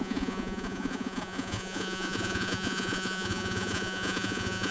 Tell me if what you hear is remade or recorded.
remade